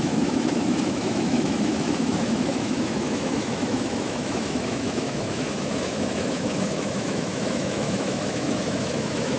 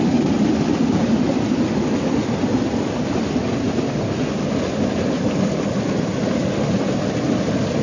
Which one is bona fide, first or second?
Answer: second